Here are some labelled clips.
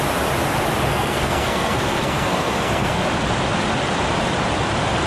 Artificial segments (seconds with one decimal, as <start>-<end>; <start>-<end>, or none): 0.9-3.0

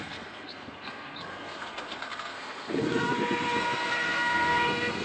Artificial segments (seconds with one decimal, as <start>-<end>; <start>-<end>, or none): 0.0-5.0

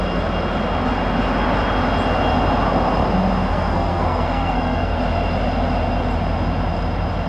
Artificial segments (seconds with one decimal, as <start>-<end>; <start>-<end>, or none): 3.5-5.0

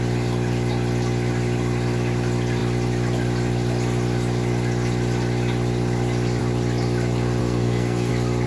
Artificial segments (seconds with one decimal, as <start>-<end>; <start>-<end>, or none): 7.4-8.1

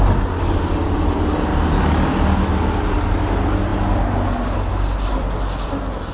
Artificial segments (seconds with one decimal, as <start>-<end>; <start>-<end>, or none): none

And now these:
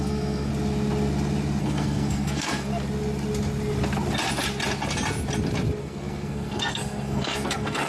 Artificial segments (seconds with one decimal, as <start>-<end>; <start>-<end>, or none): 0.0-0.5; 1.6-2.7; 5.8-7.9

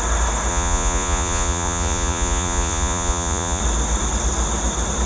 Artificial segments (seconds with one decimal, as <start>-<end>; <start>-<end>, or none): 0.5-3.6

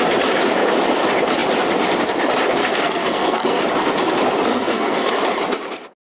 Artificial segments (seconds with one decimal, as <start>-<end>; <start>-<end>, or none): 2.6-3.6; 4.5-5.1